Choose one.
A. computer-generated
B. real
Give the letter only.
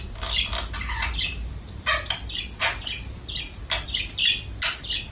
B